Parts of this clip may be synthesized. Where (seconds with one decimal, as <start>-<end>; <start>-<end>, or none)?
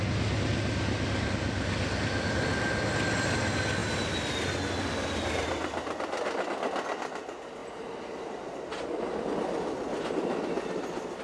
none